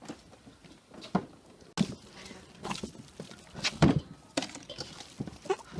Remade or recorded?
recorded